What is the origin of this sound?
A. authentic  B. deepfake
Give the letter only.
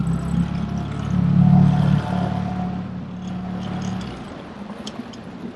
A